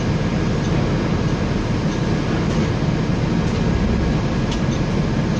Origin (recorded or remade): recorded